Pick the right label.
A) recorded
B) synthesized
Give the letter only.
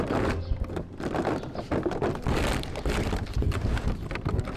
A